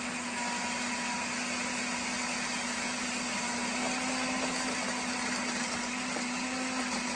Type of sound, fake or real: real